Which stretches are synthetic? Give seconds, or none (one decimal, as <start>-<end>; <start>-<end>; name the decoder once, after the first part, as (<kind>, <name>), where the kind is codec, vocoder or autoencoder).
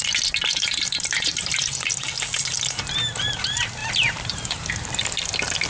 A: 0.5-1.7 (vocoder, BigVGAN v2); 3.8-4.7